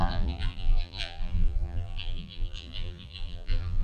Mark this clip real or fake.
fake